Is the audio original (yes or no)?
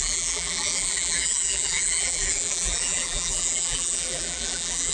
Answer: no